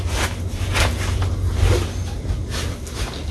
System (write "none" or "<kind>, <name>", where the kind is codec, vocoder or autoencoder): none